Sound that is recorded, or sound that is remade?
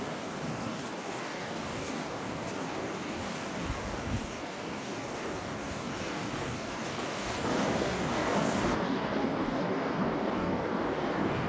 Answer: remade